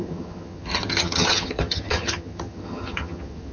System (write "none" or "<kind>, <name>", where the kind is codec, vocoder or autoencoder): vocoder, HiFi-GAN